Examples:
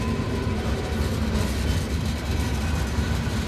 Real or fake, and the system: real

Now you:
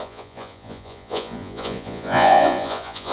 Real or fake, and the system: fake, vocoder, Vocos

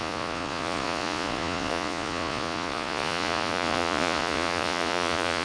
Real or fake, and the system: fake, vocoder, Vocos